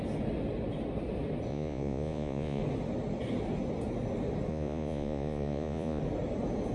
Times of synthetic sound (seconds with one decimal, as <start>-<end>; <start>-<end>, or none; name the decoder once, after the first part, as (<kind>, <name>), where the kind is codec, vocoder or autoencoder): 1.5-2.6 (vocoder, Vocos); 4.5-6.0